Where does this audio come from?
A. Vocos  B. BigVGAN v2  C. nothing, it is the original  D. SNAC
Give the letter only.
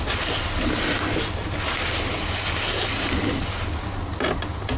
C